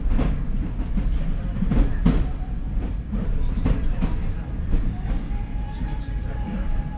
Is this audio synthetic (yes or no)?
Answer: yes